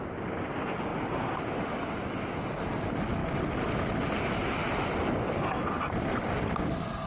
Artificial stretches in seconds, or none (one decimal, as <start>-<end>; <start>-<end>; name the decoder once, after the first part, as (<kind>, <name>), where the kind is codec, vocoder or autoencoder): 0.9-1.5 (vocoder, BigVGAN v2)